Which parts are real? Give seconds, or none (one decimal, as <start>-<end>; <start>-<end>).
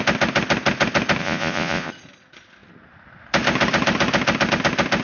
0.0-1.2; 1.9-5.0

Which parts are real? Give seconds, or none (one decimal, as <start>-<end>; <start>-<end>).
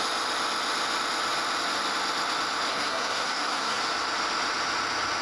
0.0-2.7; 3.8-5.2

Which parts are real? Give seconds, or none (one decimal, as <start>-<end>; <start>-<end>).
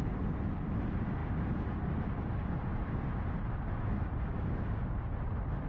0.0-5.7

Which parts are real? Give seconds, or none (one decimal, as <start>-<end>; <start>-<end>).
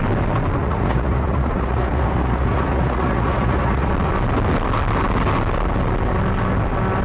0.0-0.6; 3.9-7.0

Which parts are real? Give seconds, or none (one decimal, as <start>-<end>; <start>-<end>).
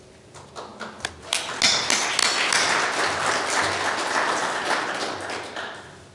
0.0-6.1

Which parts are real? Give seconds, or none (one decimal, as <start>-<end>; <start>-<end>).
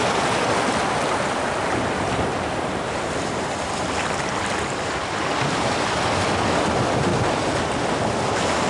5.0-6.4; 7.1-7.7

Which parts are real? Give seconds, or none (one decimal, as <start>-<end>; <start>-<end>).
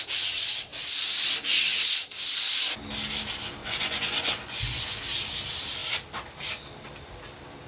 0.0-3.6; 5.0-7.7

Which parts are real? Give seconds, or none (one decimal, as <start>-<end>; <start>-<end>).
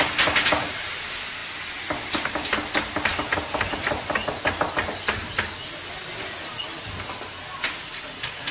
0.0-8.5